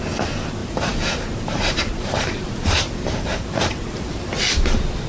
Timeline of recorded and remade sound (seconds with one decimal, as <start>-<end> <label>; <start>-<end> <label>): 0.0-0.6 recorded; 0.6-3.7 remade; 3.7-5.1 recorded